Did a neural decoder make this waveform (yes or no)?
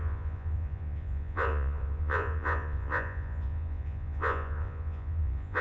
yes